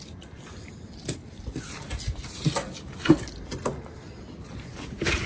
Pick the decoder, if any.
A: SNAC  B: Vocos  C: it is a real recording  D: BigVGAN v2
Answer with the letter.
C